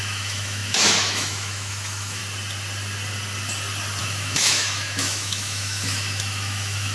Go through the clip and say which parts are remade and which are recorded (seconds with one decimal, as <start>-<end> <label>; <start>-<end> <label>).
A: 0.0-2.2 remade; 2.2-4.0 recorded; 4.0-6.9 remade